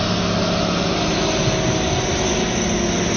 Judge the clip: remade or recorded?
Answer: recorded